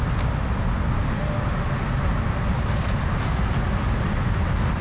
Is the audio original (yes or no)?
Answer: yes